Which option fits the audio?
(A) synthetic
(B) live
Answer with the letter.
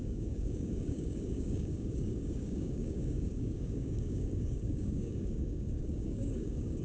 A